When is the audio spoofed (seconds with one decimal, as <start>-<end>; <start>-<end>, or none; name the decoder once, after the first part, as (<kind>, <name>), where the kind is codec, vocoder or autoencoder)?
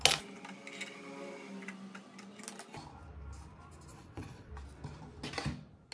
3.9-4.5 (vocoder, WaveNeXt)